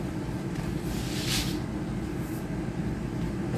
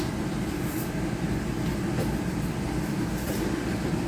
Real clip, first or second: first